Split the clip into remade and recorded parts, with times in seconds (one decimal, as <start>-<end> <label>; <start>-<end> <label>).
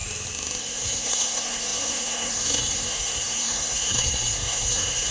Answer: 0.0-0.6 recorded; 0.6-5.1 remade